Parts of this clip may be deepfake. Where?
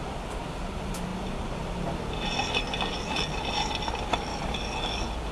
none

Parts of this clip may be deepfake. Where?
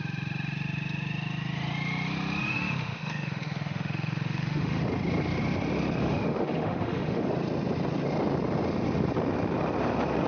2.4-4.8 (autoencoder, DAC-VAE); 6.0-7.3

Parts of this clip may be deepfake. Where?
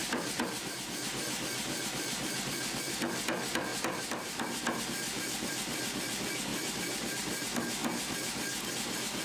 0.0-0.5 (vocoder, BigVGAN v2); 7.8-8.7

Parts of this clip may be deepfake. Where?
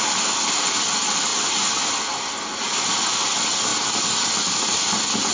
none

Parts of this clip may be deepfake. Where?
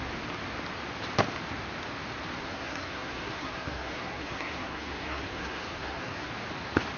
2.4-6.3 (codec, SNAC)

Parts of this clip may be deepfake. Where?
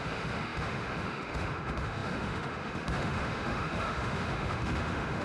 0.0-5.2 (autoencoder, DAC-VAE)